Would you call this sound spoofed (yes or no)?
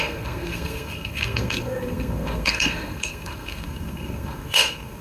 yes